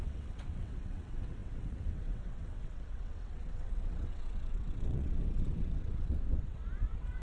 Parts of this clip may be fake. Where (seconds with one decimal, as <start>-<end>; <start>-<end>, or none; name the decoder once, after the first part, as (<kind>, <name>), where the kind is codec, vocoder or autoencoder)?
0.0-7.2 (vocoder, WaveNeXt)